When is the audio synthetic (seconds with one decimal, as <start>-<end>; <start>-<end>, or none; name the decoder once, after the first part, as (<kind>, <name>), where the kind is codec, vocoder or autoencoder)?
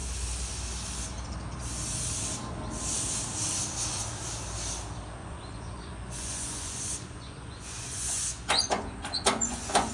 5.2-9.9 (vocoder, Vocos)